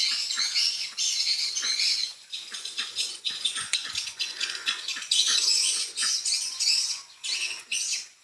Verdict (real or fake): fake